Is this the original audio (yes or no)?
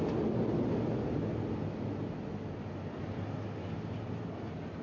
yes